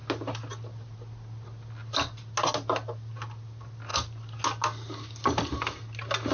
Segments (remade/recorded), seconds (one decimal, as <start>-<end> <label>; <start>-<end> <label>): 0.0-6.3 recorded